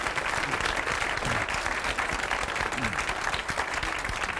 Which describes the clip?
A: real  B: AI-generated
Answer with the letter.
A